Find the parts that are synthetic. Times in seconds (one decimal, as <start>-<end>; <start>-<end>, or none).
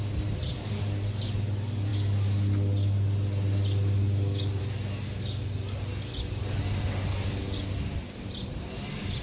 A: none